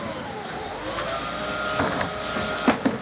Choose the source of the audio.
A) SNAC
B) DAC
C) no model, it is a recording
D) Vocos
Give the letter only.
C